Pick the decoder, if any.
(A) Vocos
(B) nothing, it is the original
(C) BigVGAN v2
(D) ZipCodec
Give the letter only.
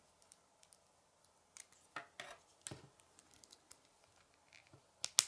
B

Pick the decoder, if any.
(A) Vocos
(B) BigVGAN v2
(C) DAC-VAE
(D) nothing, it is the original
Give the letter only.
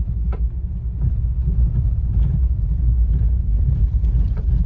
D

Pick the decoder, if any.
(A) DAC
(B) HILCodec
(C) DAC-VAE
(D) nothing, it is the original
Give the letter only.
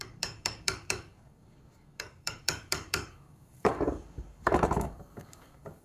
A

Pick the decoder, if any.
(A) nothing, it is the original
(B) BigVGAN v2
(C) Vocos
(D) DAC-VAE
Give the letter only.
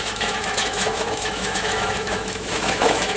D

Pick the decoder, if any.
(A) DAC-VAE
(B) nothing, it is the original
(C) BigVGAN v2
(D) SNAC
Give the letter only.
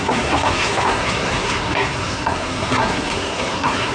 D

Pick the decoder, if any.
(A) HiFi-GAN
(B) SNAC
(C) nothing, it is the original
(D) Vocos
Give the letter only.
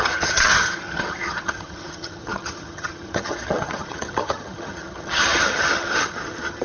A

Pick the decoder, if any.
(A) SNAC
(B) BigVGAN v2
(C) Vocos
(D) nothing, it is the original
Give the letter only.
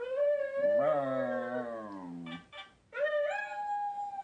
D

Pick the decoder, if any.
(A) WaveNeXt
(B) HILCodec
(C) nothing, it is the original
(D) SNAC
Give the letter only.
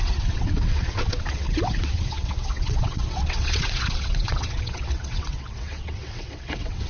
A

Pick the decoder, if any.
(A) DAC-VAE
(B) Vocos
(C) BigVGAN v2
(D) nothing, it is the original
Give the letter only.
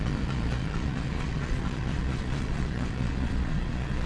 B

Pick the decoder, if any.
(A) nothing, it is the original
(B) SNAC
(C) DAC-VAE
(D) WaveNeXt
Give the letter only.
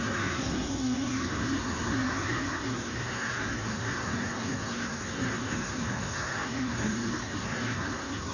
B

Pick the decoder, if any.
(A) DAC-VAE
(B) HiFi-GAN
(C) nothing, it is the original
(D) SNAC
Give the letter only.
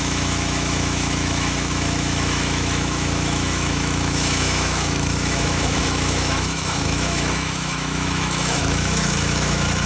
A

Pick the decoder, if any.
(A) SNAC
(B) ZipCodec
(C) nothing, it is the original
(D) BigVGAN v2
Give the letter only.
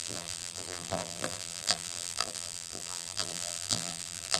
D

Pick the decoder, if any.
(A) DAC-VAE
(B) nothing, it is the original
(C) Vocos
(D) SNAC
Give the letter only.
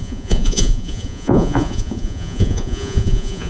C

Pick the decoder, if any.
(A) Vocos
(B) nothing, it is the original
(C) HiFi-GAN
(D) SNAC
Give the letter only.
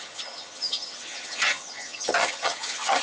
C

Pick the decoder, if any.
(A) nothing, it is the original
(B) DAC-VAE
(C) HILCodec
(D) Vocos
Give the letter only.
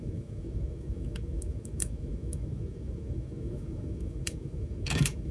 B